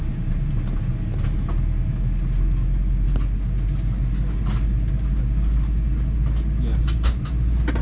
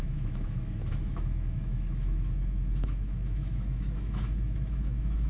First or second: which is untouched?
first